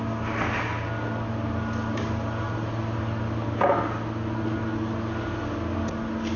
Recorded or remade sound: recorded